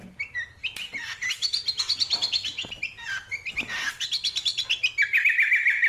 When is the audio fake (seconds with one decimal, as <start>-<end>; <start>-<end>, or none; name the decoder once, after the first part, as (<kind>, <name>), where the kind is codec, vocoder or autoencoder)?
none